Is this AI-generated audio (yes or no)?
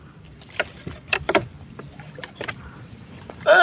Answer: yes